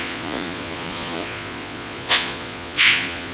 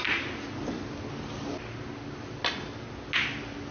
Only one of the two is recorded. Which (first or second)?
second